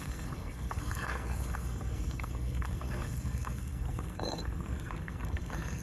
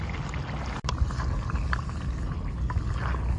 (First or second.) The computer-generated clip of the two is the first